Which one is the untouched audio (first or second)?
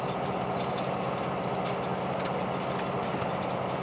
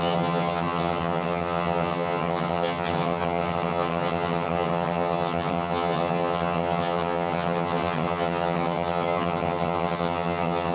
first